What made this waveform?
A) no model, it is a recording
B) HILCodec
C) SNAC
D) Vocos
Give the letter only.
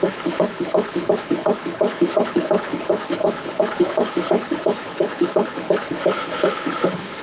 B